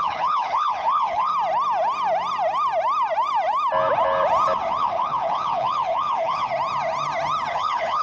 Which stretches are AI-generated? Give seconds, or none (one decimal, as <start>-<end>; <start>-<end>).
0.0-1.3; 4.8-6.5; 7.5-8.0